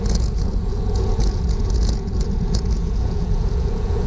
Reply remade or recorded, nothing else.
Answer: remade